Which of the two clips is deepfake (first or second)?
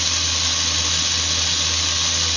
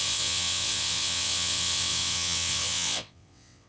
second